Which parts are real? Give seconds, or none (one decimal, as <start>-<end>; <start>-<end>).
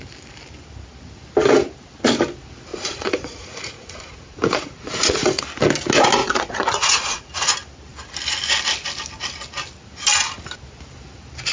0.0-2.7; 5.4-6.2; 7.5-11.5